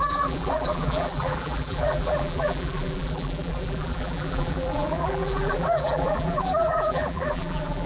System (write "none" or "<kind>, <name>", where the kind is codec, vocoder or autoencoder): vocoder, BigVGAN v2